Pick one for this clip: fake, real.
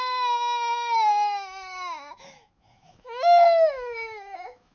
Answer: fake